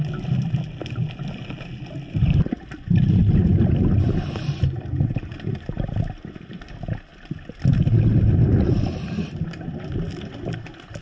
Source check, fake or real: real